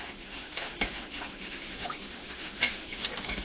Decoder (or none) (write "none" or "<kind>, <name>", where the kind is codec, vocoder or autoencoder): autoencoder, DAC-VAE